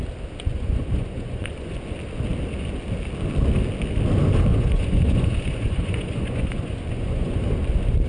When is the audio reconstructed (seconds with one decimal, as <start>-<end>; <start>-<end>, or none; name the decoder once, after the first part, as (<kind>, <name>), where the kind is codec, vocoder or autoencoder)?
0.5-1.7 (vocoder, Vocos); 4.5-7.4